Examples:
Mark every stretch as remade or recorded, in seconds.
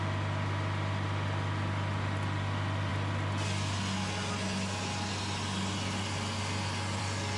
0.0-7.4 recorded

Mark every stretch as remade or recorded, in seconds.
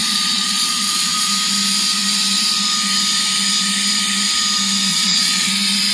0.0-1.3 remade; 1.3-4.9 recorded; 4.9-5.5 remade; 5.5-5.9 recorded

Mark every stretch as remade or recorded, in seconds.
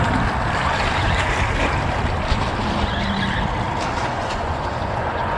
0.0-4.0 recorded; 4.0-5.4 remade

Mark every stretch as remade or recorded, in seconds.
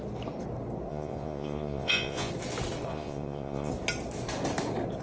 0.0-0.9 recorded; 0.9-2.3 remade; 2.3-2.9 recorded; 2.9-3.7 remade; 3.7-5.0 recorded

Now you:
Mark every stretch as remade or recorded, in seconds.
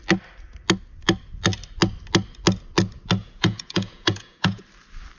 0.0-3.2 recorded; 3.2-4.6 remade; 4.6-5.2 recorded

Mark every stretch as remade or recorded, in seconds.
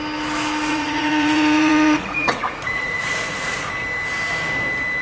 0.0-0.7 recorded; 0.7-3.7 remade; 3.7-5.0 recorded